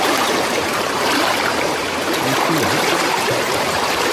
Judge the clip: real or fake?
fake